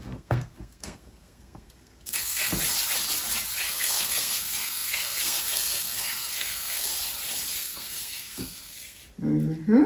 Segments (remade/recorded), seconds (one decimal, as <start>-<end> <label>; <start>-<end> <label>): 0.0-2.5 remade; 2.5-3.6 recorded; 3.6-6.9 remade; 6.9-7.5 recorded; 7.5-9.0 remade; 9.0-9.9 recorded